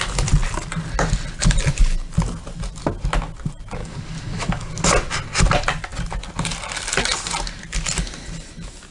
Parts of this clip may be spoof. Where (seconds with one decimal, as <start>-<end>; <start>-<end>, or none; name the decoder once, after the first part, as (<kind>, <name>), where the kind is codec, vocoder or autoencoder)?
3.8-4.7 (codec, DAC)